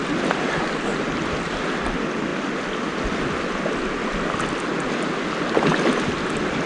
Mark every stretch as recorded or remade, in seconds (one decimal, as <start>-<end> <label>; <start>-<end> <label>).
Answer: 0.0-6.7 recorded